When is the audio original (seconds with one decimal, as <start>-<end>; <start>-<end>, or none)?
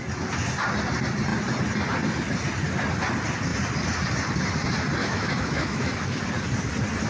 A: 0.0-5.0; 6.2-7.1